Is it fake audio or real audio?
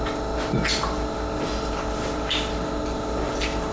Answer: real